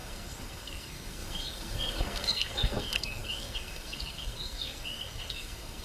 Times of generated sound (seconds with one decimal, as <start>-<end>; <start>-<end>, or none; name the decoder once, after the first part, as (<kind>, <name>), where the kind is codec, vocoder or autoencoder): 0.0-5.8 (codec, SNAC)